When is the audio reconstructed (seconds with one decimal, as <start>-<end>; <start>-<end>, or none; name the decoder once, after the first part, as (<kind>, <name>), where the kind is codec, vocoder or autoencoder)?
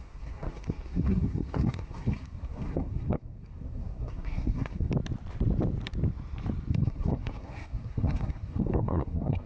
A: 0.0-4.9 (codec, SNAC); 6.7-9.5